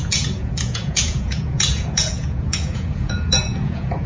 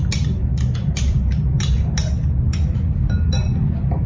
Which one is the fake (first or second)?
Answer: first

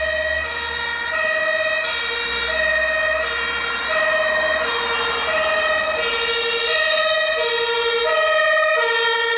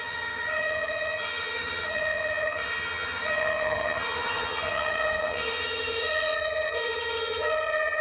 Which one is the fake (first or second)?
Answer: second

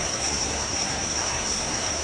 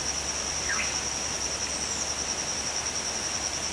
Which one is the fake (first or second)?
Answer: first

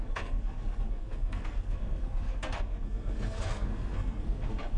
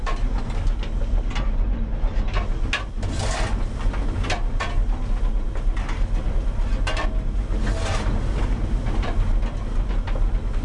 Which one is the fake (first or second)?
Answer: first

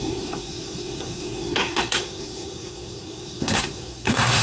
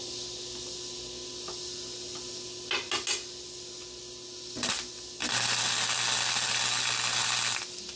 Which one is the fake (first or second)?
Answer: first